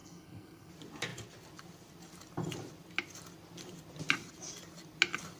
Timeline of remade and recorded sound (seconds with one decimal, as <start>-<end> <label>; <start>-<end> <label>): 0.0-0.7 remade; 0.7-5.4 recorded